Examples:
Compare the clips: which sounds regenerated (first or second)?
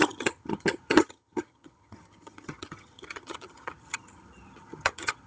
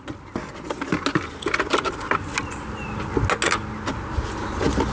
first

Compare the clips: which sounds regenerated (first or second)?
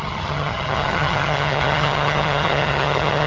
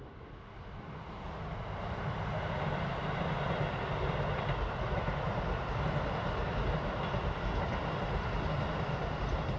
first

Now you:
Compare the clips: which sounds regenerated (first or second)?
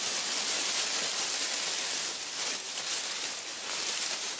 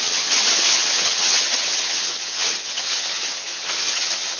second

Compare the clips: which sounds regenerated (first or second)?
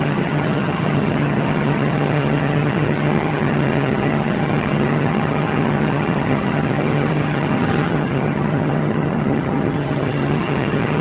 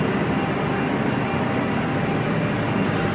first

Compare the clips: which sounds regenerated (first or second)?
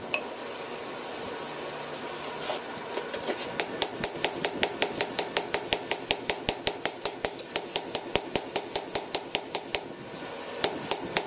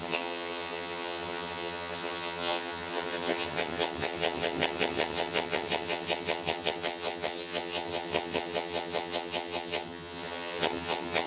second